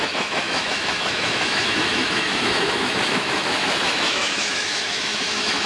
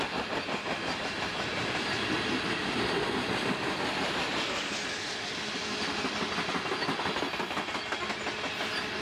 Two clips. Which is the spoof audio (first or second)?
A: first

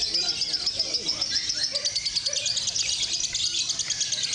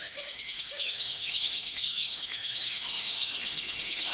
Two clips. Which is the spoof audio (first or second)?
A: second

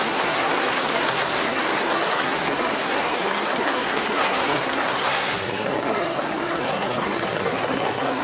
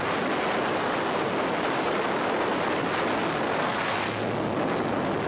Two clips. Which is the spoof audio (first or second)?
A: first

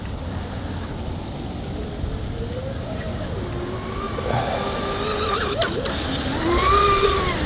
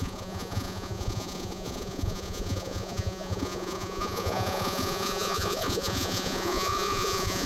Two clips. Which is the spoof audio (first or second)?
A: second